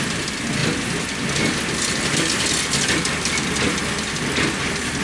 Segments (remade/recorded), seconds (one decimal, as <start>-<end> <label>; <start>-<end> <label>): 0.0-5.0 recorded